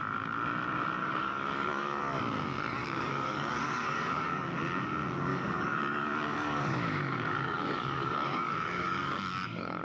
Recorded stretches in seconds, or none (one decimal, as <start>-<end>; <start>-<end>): 0.0-1.0; 2.0-2.8; 4.5-5.3